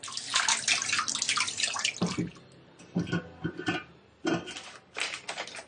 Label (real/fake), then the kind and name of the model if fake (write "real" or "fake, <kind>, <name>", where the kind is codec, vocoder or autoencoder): real